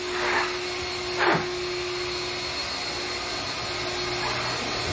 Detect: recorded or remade recorded